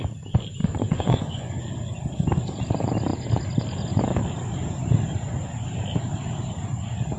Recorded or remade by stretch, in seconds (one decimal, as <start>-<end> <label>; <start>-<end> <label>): 0.0-0.6 recorded; 0.6-1.6 remade; 1.6-7.2 recorded